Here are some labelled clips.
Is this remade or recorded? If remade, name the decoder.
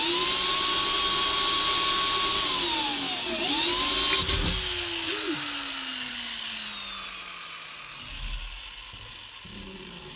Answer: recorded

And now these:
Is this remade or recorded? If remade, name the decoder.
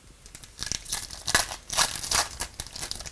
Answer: recorded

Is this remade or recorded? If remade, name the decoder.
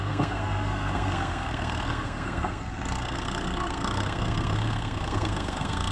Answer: remade, codec, SNAC